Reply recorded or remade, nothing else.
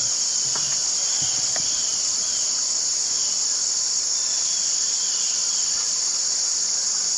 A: recorded